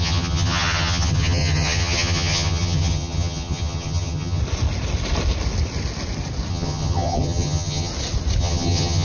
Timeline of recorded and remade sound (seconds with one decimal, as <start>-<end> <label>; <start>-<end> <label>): 0.0-4.4 remade; 4.4-6.5 recorded; 6.5-7.9 remade; 7.9-8.4 recorded; 8.4-9.0 remade